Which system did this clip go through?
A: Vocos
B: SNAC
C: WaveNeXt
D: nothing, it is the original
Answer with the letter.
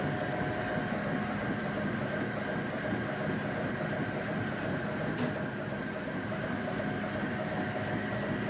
D